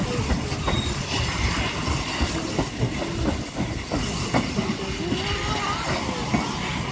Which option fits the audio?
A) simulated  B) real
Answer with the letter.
B